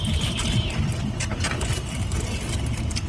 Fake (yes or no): no